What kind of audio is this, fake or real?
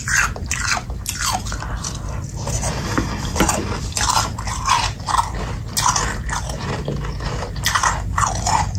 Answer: real